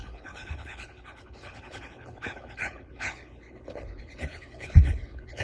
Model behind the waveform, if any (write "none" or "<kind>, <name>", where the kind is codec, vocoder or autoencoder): codec, HILCodec